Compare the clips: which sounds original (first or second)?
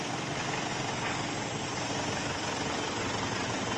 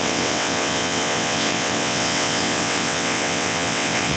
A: first